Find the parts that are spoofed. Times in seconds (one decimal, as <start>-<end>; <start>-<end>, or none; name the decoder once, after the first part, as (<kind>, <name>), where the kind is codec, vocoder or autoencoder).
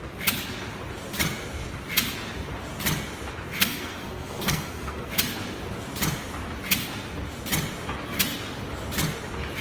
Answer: 3.6-5.1 (codec, SNAC)